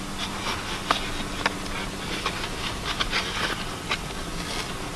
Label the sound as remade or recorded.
recorded